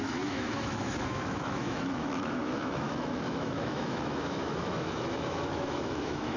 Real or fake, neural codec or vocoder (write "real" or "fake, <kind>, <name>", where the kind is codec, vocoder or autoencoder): fake, autoencoder, DAC-VAE